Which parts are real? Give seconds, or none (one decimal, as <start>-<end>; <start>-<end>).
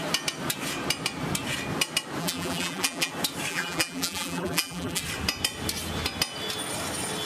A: 0.0-2.2; 3.1-3.5; 5.0-7.3